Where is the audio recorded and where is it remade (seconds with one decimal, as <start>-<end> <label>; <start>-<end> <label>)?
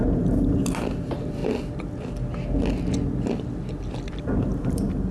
0.0-1.4 remade; 1.4-4.4 recorded; 4.4-5.1 remade